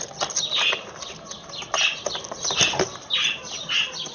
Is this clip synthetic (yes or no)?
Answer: no